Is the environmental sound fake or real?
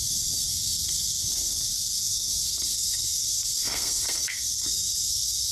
fake